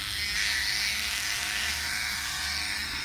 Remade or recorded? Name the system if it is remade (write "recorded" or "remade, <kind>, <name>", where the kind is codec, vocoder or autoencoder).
remade, codec, SNAC